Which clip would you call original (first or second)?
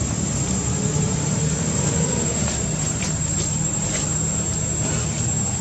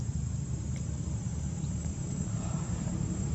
first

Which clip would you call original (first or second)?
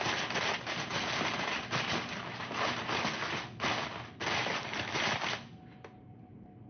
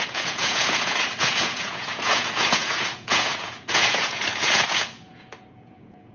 first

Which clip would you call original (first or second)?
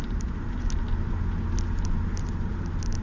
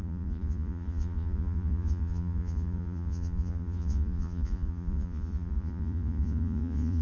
first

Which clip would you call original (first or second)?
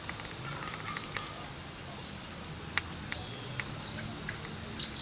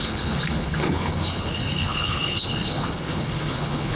first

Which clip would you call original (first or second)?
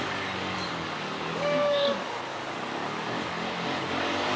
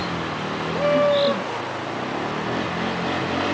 second